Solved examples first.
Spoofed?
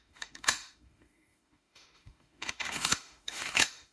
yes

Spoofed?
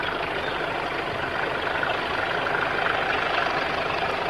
no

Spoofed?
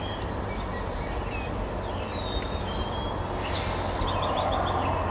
no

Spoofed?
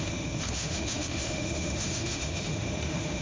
yes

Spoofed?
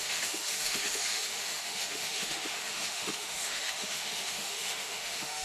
yes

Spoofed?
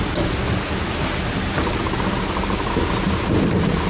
no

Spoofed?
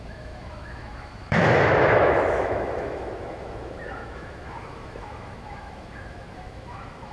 yes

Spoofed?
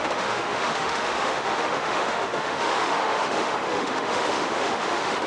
yes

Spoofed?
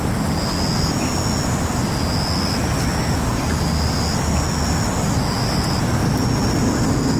no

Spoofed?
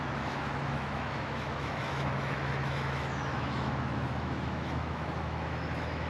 yes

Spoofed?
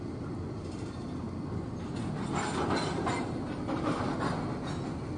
no